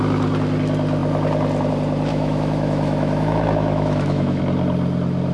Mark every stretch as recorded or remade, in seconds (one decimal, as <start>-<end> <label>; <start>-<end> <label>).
0.0-2.1 recorded; 2.1-4.4 remade; 4.4-5.3 recorded